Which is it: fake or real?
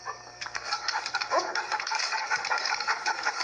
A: fake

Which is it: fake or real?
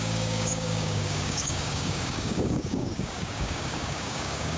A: fake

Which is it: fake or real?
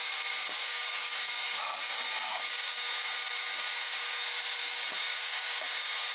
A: fake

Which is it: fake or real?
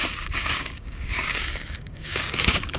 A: fake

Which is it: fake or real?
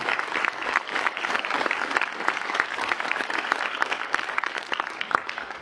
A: fake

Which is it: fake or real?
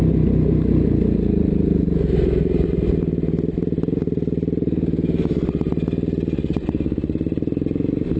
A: real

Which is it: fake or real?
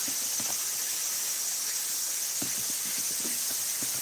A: real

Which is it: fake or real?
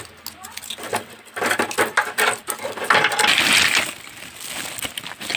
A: real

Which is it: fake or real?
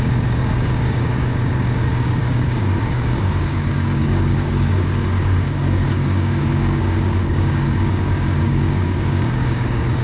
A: fake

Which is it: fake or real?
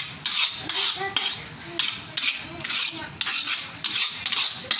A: real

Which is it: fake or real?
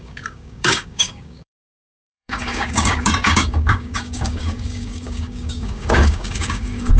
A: fake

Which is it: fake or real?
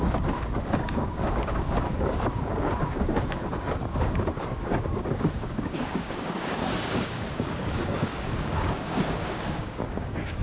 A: fake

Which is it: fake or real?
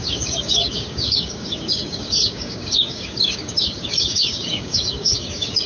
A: fake